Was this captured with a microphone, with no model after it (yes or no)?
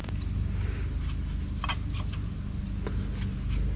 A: yes